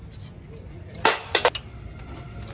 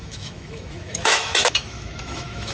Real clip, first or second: first